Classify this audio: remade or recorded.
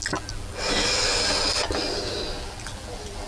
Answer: recorded